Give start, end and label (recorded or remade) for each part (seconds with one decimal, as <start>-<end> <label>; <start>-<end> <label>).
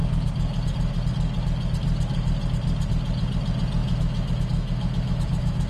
0.0-3.8 recorded; 3.8-5.7 remade